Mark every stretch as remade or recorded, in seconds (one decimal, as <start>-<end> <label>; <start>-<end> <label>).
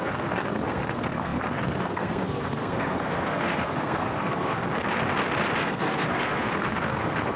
0.0-4.6 remade; 4.6-5.6 recorded; 5.6-7.4 remade